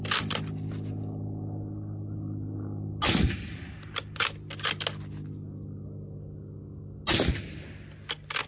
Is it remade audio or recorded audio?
recorded